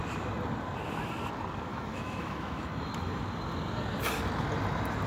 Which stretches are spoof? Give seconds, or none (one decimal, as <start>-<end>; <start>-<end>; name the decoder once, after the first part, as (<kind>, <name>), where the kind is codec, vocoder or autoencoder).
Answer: 1.7-3.2 (autoencoder, DAC-VAE)